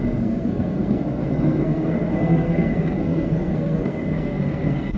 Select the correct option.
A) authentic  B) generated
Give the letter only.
B